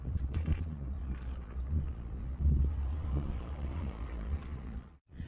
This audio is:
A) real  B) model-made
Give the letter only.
B